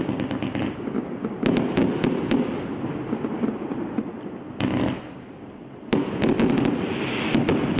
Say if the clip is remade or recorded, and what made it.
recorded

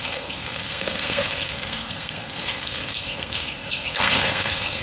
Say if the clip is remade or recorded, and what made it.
remade, codec, SNAC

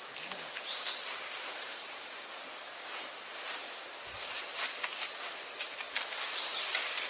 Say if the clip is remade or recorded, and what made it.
recorded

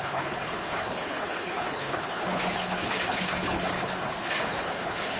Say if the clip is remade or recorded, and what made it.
remade, codec, HILCodec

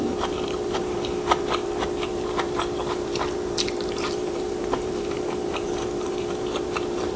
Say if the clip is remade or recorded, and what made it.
remade, vocoder, BigVGAN v2